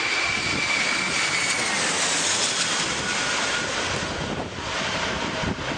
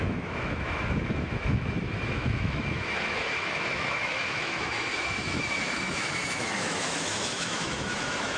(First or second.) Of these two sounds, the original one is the first